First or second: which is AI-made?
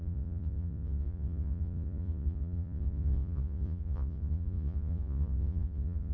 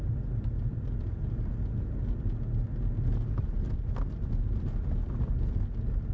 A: first